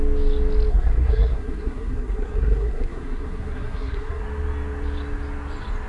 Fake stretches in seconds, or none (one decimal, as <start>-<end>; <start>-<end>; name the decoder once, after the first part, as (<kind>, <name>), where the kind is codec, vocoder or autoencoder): 0.7-4.2 (codec, SNAC)